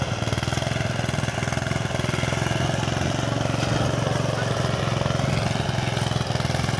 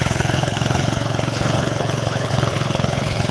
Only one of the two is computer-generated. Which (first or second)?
second